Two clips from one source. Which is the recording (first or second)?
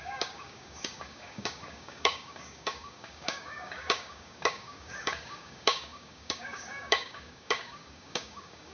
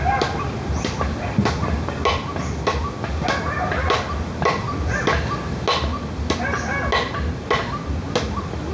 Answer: second